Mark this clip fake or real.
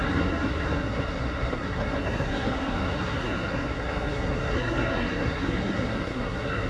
fake